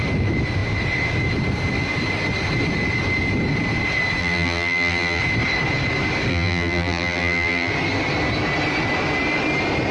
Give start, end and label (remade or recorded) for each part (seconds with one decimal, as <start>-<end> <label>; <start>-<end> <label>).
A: 0.0-4.2 recorded; 4.2-5.2 remade; 5.2-6.3 recorded; 6.3-7.7 remade; 7.7-9.9 recorded